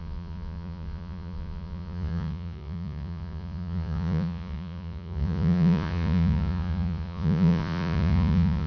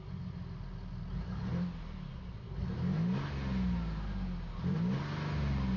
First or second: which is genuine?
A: second